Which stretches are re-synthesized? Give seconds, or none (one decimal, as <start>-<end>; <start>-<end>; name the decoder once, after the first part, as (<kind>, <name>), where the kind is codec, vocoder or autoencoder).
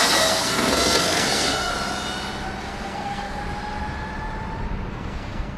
0.0-1.7 (codec, SNAC); 2.6-3.4; 4.9-5.6